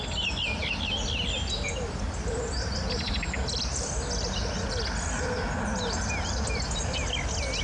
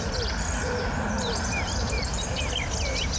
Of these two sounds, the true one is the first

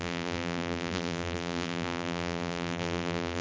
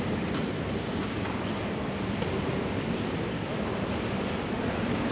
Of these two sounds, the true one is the second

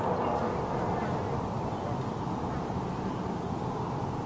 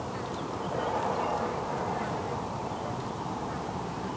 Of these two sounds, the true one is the first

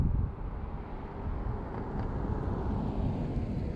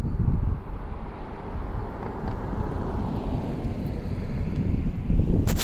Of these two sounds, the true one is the first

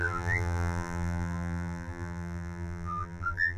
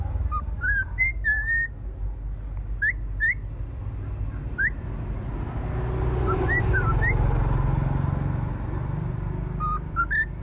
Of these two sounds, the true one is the second